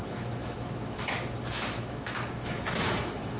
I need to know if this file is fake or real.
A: fake